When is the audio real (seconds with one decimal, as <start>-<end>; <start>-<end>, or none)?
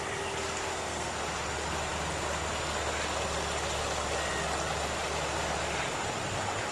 0.0-0.7; 1.2-6.7